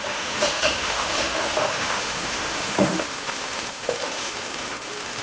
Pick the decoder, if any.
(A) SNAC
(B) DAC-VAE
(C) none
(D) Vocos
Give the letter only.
B